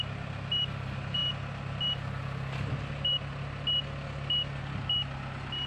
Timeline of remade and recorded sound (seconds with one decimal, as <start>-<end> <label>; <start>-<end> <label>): 0.0-5.7 recorded